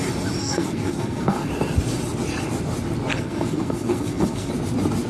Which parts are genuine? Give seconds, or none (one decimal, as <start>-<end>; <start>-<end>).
0.0-0.4; 1.5-3.1; 4.5-5.1